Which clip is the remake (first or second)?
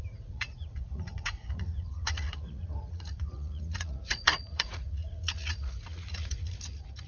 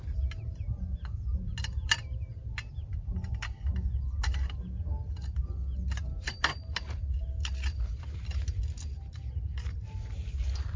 first